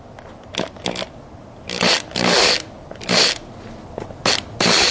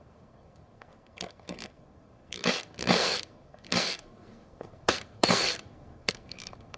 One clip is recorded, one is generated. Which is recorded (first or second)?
first